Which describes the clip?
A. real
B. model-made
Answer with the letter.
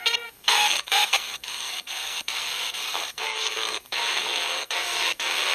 B